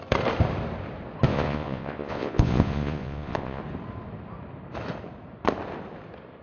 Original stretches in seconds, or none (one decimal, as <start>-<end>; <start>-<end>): 0.0-1.3; 3.6-6.4